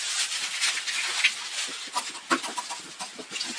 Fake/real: real